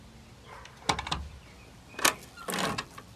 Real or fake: real